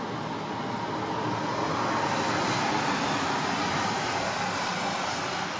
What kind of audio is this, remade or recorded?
recorded